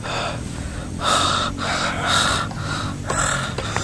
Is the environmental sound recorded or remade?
recorded